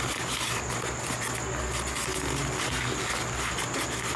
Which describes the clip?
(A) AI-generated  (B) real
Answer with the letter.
B